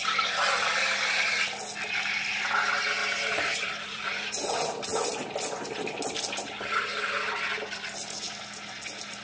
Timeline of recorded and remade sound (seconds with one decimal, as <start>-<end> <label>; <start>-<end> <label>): 0.0-3.0 recorded; 3.0-4.5 remade; 4.5-9.2 recorded